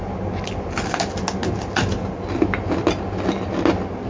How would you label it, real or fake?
real